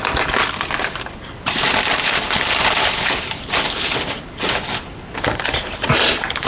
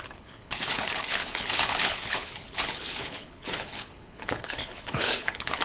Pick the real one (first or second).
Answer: first